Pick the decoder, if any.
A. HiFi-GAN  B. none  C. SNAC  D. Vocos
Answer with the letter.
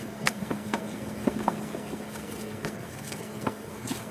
C